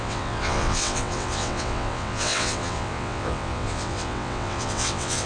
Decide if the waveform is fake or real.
fake